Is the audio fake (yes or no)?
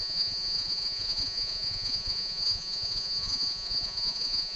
yes